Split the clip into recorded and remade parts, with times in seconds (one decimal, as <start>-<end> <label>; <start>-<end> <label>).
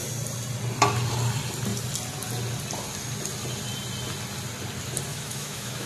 0.0-5.1 recorded; 5.1-5.9 remade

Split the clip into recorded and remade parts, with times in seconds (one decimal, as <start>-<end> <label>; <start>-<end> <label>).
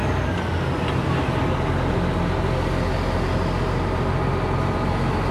0.0-5.3 recorded